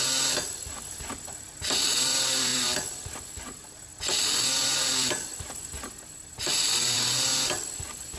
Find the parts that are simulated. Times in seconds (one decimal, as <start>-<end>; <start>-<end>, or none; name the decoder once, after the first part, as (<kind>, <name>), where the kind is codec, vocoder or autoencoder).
none